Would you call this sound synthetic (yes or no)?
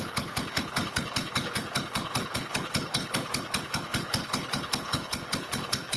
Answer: yes